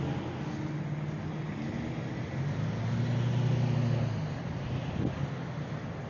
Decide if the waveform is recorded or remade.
recorded